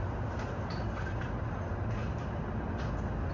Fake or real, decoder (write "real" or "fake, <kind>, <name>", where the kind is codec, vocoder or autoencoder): real